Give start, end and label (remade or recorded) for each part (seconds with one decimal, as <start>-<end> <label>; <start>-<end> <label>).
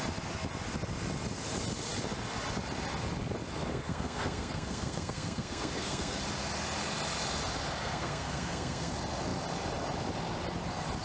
0.0-3.7 recorded; 3.7-6.2 remade; 6.2-7.8 recorded; 7.8-8.9 remade; 8.9-11.0 recorded